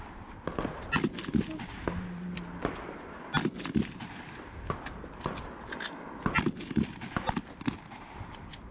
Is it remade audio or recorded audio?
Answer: recorded